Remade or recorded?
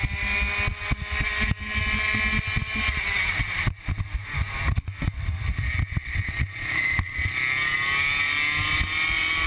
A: recorded